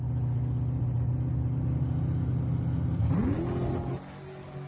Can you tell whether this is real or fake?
real